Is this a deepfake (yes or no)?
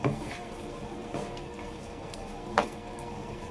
yes